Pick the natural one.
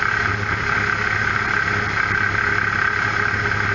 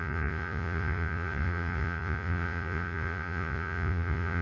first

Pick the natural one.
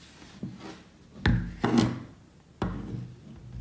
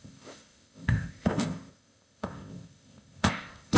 first